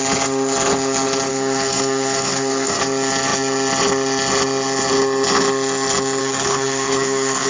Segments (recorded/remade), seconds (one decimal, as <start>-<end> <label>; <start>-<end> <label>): 0.0-1.3 recorded; 1.3-2.8 remade; 2.8-6.2 recorded; 6.2-7.5 remade